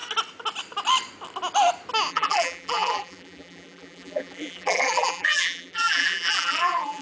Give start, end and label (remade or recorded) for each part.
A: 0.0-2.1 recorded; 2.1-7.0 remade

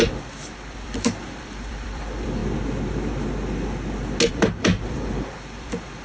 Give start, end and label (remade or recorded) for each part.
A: 0.0-2.4 remade; 2.4-4.3 recorded; 4.3-6.0 remade

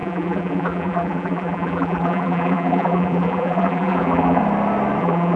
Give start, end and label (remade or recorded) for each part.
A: 0.0-4.4 remade; 4.4-5.0 recorded; 5.0-5.4 remade